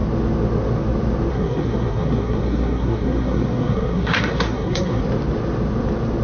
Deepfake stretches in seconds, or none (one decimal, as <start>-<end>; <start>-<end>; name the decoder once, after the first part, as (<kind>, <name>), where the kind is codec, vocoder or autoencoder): 1.3-5.0 (codec, SNAC)